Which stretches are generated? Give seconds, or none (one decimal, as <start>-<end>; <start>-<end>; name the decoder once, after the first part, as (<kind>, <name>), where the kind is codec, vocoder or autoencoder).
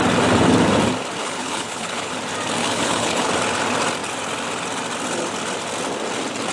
1.2-2.1 (codec, HILCodec); 2.6-3.3